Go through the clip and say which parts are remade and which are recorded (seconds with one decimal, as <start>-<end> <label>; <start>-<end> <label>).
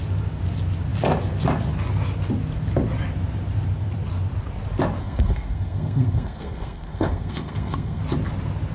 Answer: 0.0-5.0 recorded; 5.0-8.0 remade; 8.0-8.7 recorded